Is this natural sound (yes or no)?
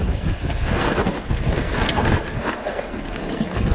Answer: no